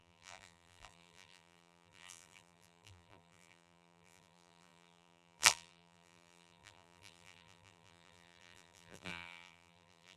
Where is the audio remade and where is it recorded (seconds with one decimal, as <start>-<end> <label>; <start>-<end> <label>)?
0.0-10.2 remade

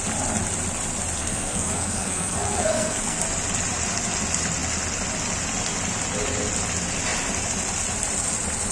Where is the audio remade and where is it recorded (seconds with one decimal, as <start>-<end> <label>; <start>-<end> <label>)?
0.0-1.2 recorded; 1.2-3.2 remade; 3.2-8.7 recorded